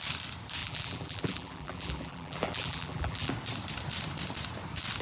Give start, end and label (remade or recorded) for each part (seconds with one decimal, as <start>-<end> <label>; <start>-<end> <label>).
0.0-0.6 recorded; 0.6-3.3 remade; 3.3-5.0 recorded